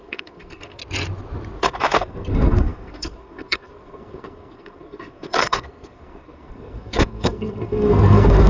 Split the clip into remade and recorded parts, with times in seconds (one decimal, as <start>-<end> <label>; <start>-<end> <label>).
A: 0.0-0.8 remade; 0.8-1.6 recorded; 1.6-8.5 remade